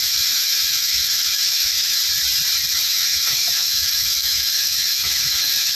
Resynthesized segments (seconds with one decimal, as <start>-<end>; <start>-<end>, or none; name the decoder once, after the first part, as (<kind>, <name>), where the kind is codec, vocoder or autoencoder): 0.0-2.0 (autoencoder, DAC-VAE); 2.7-5.7